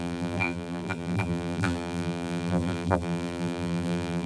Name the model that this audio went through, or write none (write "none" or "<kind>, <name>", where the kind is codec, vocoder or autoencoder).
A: vocoder, BigVGAN v2